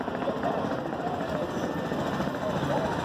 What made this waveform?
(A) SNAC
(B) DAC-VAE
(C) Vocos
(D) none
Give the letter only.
D